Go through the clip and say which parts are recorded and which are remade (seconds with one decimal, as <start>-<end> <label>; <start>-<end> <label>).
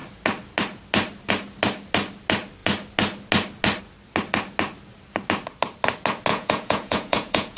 0.0-6.3 recorded; 6.3-7.6 remade